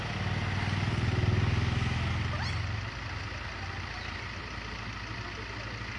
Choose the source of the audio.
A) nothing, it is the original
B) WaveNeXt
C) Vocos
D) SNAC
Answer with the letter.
A